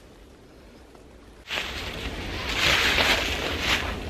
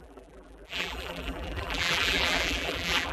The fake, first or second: second